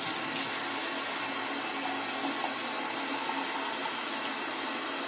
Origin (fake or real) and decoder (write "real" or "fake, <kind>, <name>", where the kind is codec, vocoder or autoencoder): real